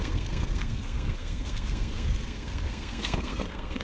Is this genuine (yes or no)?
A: no